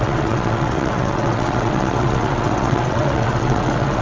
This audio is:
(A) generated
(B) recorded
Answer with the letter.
A